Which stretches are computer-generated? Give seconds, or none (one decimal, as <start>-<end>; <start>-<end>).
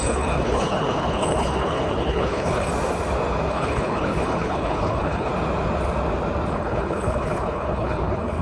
0.0-2.7; 3.5-5.3; 6.5-8.4